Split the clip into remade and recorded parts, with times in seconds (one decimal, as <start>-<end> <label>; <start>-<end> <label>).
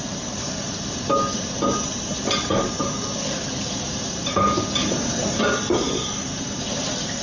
0.0-7.2 recorded